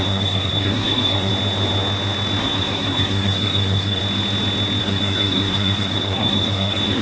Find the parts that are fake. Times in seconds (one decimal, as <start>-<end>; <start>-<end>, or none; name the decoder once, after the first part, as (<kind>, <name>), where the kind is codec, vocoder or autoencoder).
0.0-1.3 (codec, SNAC); 2.4-4.0; 4.8-7.0